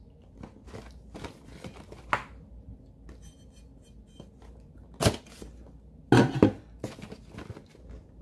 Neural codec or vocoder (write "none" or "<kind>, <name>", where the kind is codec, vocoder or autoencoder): none